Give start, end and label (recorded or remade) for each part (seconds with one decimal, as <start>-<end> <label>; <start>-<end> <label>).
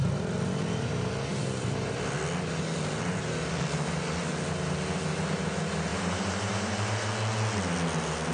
0.0-5.9 recorded; 5.9-7.1 remade; 7.1-8.3 recorded